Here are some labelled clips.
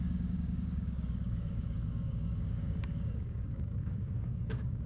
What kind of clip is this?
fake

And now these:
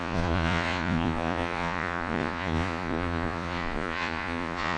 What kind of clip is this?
fake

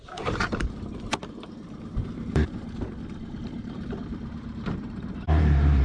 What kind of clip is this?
fake